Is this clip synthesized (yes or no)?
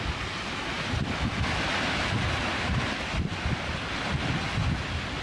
no